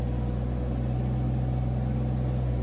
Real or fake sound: real